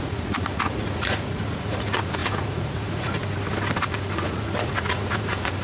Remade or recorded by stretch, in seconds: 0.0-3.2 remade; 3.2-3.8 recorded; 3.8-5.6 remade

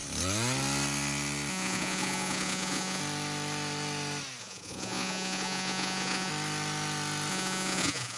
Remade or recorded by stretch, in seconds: 0.0-1.5 recorded; 1.5-3.0 remade; 3.0-4.4 recorded; 4.4-6.3 remade; 6.3-7.3 recorded; 7.3-8.2 remade

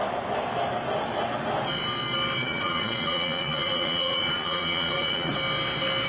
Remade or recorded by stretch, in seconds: 0.0-2.4 recorded; 2.4-5.3 remade; 5.3-6.1 recorded

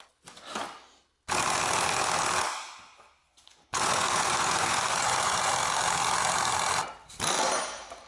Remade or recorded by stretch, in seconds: 0.0-3.7 recorded; 3.7-5.5 remade; 5.5-8.1 recorded

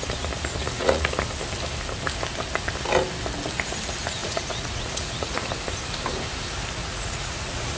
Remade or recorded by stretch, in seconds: 0.0-0.6 recorded; 0.6-1.1 remade; 1.1-4.2 recorded; 4.2-5.5 remade; 5.5-6.8 recorded; 6.8-7.8 remade

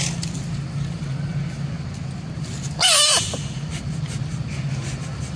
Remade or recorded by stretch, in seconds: 0.0-5.4 recorded

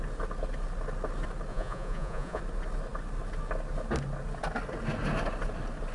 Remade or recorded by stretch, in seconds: 0.0-1.5 recorded; 1.5-2.4 remade; 2.4-5.9 recorded

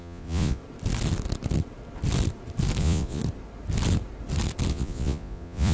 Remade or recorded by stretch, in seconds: 0.0-0.6 remade; 0.6-2.8 recorded; 2.8-3.2 remade; 3.2-4.7 recorded; 4.7-5.7 remade